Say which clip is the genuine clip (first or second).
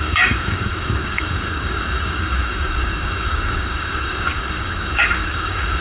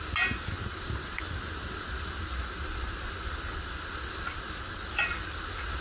second